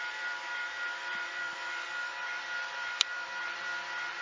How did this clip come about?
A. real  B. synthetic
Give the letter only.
B